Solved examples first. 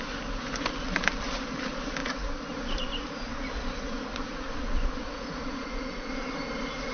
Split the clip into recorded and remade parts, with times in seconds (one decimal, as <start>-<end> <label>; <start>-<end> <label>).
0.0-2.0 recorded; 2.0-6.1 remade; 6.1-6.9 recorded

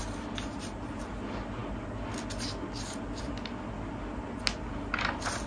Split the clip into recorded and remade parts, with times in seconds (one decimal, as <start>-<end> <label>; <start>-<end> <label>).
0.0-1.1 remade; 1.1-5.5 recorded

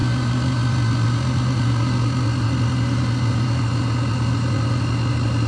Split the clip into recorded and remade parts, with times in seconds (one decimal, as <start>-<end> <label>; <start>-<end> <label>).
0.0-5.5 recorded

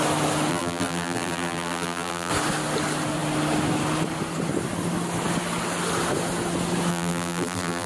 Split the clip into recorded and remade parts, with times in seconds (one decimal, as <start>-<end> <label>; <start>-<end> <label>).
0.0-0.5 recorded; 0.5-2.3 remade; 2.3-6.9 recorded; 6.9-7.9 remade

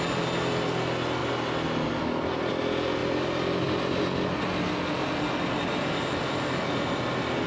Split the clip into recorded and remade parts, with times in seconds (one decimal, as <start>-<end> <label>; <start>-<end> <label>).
0.0-7.5 recorded

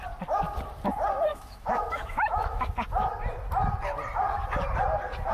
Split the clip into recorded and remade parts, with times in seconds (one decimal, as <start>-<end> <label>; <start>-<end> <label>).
0.0-1.3 recorded; 1.3-2.7 remade; 2.7-5.3 recorded